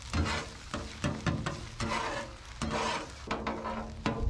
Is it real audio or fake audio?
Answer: real